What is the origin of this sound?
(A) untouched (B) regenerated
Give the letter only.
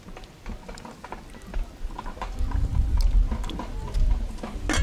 A